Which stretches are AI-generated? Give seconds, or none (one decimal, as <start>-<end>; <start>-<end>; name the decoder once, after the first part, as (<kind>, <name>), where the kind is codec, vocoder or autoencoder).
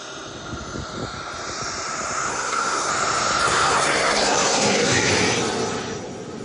2.3-2.9 (codec, SNAC); 3.4-5.1